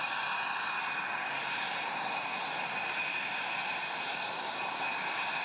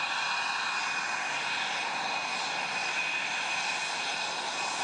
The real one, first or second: second